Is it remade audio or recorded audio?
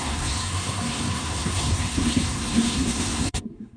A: remade